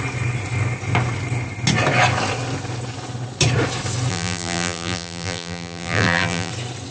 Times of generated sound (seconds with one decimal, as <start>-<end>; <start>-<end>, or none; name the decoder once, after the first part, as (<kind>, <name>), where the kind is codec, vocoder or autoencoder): 4.1-6.5 (vocoder, BigVGAN v2)